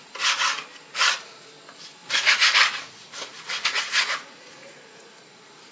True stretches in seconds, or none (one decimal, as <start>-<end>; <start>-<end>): 0.0-0.9; 1.5-2.0